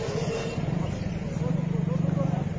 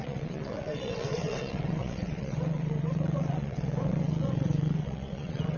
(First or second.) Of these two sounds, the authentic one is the first